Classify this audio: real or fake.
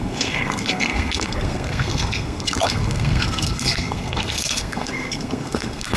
fake